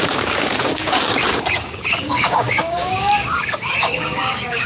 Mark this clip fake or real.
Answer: fake